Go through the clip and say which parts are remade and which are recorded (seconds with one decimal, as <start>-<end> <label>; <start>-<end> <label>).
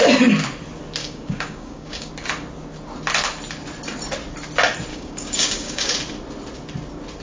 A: 0.0-1.0 recorded; 1.0-2.1 remade; 2.1-4.9 recorded; 4.9-5.9 remade; 5.9-7.2 recorded